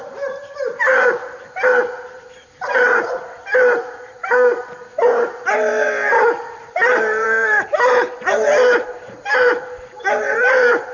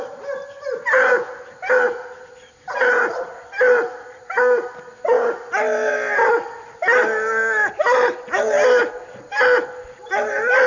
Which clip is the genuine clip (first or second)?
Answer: second